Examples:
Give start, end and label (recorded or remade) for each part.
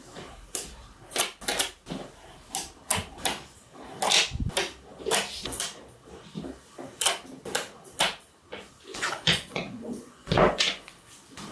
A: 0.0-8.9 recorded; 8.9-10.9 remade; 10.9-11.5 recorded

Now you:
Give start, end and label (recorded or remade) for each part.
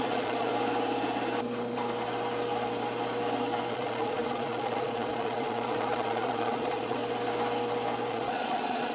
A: 0.0-0.5 remade; 0.5-3.7 recorded; 3.7-7.0 remade; 7.0-8.1 recorded; 8.1-8.9 remade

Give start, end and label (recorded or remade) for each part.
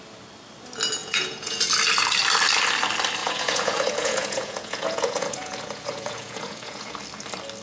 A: 0.0-1.0 recorded; 1.0-1.6 remade; 1.6-3.2 recorded; 3.2-6.9 remade; 6.9-7.6 recorded